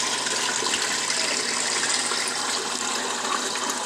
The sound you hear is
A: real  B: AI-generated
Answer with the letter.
A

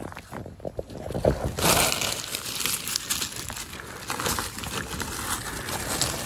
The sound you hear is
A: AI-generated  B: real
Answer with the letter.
B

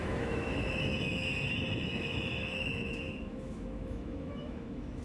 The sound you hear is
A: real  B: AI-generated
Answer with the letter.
B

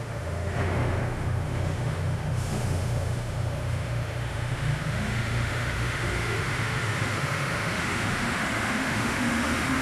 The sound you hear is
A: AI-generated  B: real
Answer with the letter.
A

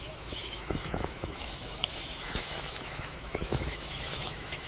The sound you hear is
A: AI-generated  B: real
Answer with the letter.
A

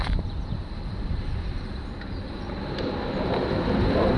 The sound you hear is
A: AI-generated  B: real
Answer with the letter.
B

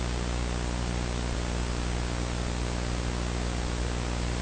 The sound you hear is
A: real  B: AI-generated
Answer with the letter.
A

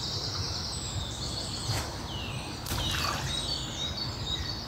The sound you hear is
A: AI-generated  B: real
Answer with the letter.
B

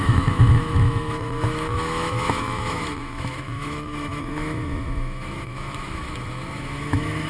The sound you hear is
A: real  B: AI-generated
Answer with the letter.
B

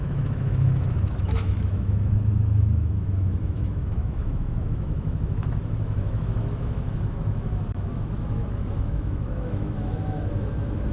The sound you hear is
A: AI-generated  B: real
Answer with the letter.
A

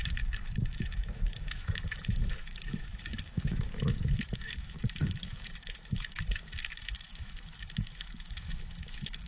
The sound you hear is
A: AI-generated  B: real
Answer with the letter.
A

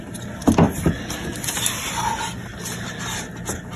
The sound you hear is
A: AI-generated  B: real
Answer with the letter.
B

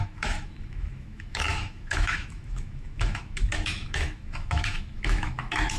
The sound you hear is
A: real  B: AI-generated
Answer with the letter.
B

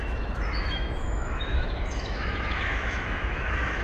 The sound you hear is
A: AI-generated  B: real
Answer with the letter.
A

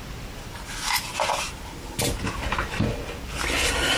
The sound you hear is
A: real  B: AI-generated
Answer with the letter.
A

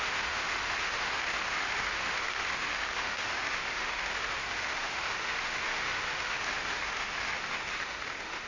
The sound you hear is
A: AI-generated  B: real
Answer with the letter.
A